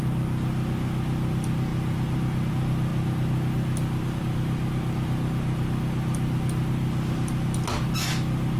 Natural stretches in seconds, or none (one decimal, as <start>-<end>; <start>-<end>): 0.0-8.6